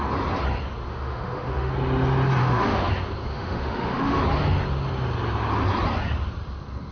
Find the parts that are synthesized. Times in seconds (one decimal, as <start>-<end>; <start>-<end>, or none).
0.9-1.7; 2.4-2.9; 3.3-4.2